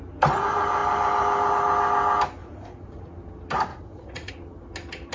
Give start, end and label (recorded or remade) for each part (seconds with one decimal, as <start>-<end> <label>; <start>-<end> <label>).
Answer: 0.0-2.4 recorded; 2.4-3.1 remade; 3.1-3.7 recorded; 3.7-4.3 remade; 4.3-5.1 recorded

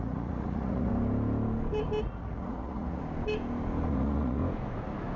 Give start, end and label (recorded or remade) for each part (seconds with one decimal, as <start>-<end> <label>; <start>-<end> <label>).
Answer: 0.0-0.9 remade; 0.9-2.0 recorded; 2.0-3.0 remade; 3.0-3.9 recorded; 3.9-4.4 remade; 4.4-5.2 recorded